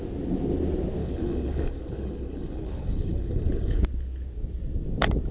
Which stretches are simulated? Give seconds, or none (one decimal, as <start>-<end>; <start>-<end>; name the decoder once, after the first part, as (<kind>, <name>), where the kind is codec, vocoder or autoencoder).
1.0-3.8 (codec, HILCodec)